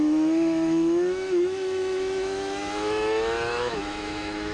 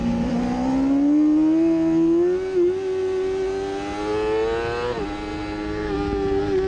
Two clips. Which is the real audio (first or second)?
second